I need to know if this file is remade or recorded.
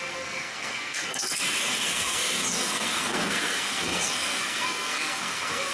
remade